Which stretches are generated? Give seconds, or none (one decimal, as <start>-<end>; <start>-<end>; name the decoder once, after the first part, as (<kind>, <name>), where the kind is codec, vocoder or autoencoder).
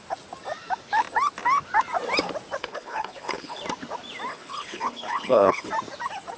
2.6-3.6 (codec, HILCodec); 4.3-5.7